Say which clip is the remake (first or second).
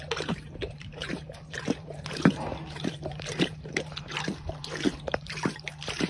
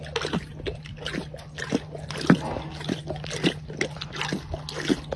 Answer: first